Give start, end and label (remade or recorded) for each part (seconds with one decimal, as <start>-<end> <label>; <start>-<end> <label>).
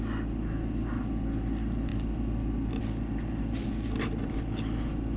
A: 0.0-5.2 recorded